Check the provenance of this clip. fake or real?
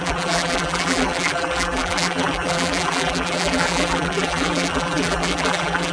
fake